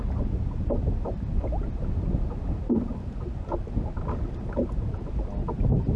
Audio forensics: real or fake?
real